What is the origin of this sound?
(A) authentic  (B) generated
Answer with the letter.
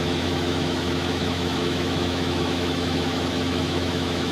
B